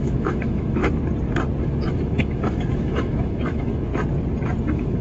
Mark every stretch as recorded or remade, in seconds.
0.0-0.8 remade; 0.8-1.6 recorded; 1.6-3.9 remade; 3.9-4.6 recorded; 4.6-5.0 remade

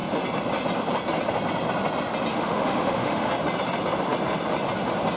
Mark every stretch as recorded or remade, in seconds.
0.0-2.3 recorded; 2.3-3.3 remade; 3.3-5.2 recorded

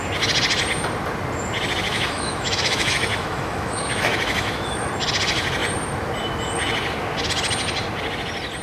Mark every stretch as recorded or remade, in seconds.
0.0-1.9 recorded; 1.9-4.9 remade; 4.9-8.6 recorded

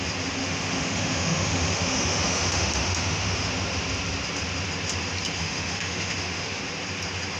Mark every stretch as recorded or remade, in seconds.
0.0-0.4 recorded; 0.4-3.5 remade; 3.5-5.4 recorded; 5.4-6.6 remade; 6.6-7.4 recorded